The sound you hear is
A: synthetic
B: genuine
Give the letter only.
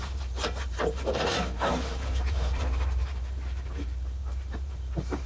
A